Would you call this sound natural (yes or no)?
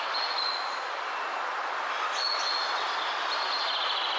yes